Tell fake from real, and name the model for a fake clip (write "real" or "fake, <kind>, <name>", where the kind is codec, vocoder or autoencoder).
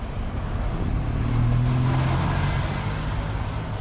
real